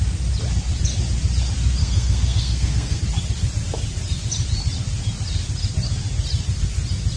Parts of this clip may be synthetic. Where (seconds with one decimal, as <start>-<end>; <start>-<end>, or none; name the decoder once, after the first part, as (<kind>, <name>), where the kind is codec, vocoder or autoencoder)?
1.8-3.0 (codec, SNAC)